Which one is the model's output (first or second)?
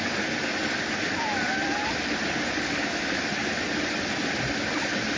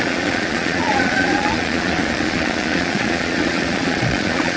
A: second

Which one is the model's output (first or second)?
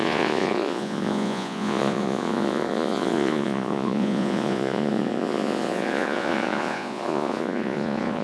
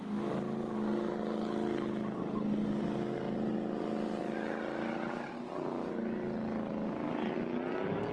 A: first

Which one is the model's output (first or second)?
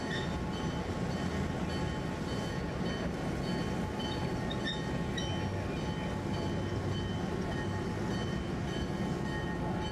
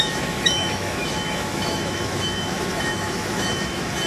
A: second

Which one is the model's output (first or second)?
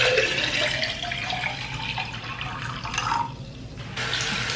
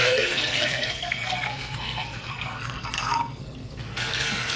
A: second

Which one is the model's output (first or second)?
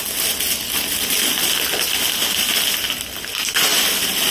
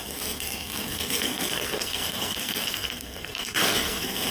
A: second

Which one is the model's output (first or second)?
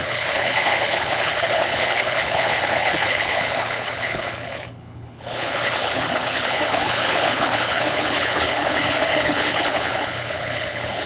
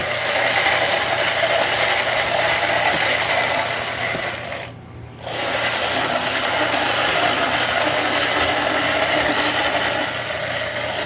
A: first